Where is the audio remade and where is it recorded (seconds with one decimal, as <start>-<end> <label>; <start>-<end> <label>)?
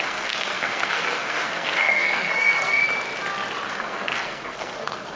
0.0-2.8 remade; 2.8-3.7 recorded; 3.7-5.2 remade